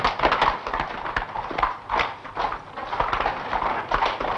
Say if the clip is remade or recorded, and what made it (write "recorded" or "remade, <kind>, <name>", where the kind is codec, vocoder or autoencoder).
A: recorded